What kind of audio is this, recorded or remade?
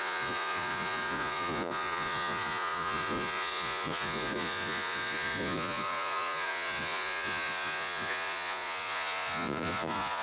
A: remade